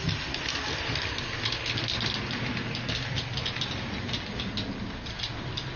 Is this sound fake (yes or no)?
no